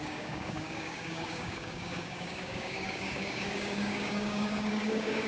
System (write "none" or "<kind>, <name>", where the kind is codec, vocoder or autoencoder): codec, DAC